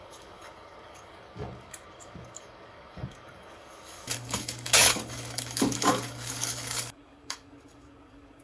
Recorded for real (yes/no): no